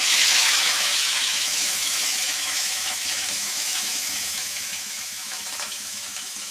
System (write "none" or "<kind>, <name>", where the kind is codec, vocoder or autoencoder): autoencoder, DAC-VAE